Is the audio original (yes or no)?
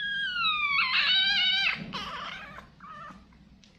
yes